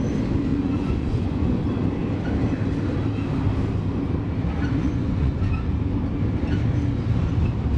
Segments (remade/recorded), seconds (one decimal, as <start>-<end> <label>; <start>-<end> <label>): 0.0-0.5 recorded; 0.5-1.6 remade; 1.6-4.8 recorded; 4.8-5.5 remade; 5.5-7.8 recorded